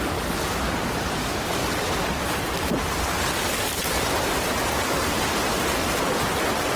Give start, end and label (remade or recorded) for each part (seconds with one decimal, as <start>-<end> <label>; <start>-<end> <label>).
0.0-6.8 recorded